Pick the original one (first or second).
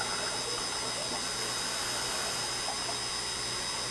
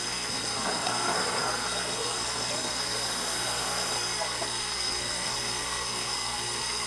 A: first